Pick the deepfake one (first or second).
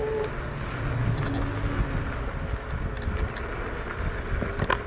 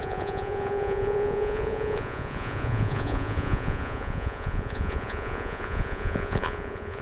second